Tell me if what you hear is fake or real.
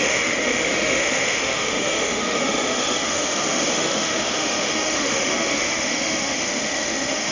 fake